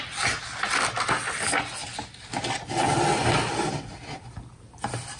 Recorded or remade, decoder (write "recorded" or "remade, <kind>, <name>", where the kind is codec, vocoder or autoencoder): recorded